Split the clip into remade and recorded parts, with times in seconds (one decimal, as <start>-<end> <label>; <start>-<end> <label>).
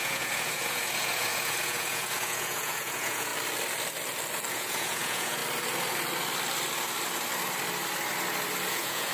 0.0-3.3 remade; 3.3-4.5 recorded; 4.5-5.4 remade; 5.4-8.7 recorded; 8.7-9.1 remade